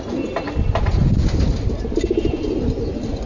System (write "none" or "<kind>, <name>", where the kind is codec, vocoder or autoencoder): none